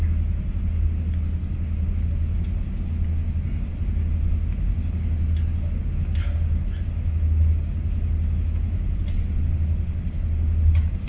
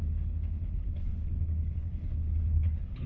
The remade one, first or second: second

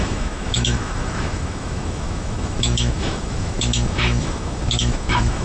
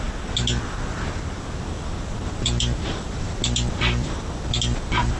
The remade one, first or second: first